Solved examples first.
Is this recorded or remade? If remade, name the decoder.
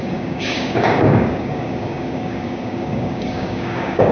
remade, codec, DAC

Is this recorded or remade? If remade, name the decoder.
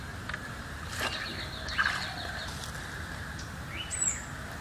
recorded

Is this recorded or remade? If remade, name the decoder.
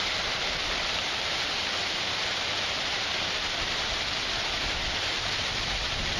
remade, vocoder, BigVGAN v2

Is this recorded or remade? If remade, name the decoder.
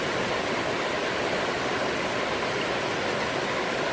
recorded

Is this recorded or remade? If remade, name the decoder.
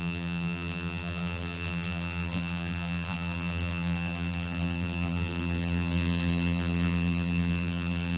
remade, vocoder, BigVGAN v2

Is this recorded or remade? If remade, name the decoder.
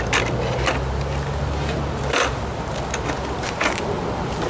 recorded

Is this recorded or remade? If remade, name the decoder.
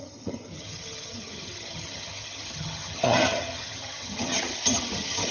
remade, vocoder, HiFi-GAN